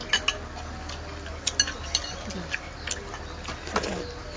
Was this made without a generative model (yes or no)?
yes